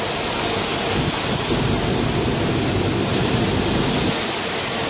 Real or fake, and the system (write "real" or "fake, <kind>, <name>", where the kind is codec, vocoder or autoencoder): real